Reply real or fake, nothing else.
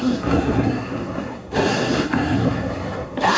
fake